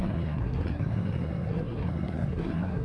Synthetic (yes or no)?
yes